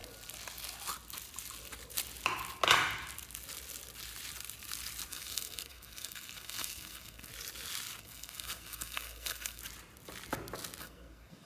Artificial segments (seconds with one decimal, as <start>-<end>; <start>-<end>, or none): 5.1-7.3; 8.0-9.6; 10.8-11.5